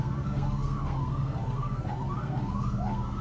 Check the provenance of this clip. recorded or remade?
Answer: remade